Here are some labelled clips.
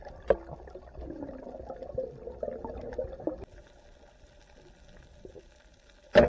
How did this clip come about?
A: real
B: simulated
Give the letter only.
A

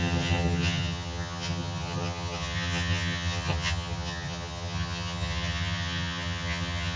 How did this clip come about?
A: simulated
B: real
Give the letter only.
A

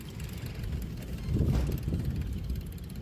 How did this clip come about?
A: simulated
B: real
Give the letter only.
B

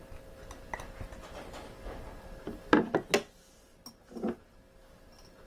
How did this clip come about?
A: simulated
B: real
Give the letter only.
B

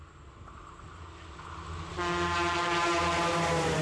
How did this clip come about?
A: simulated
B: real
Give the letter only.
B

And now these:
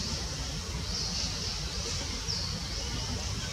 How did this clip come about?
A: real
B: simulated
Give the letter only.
A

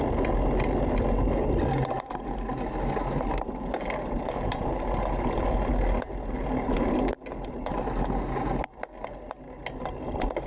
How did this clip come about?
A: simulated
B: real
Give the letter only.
B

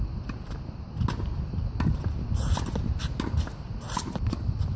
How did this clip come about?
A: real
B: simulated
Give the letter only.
A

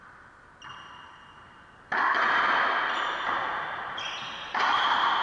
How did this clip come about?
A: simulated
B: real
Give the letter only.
B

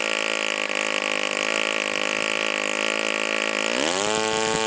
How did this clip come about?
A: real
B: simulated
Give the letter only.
A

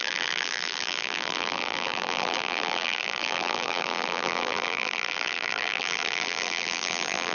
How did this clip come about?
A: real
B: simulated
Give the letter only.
B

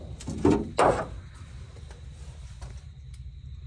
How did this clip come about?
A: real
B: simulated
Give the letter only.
A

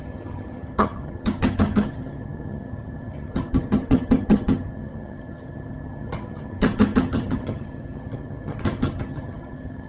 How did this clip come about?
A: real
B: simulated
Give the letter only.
B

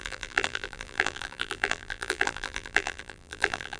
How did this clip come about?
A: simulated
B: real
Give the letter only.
A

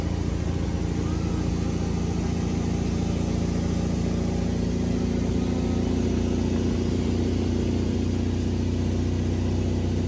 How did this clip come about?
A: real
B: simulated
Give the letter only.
A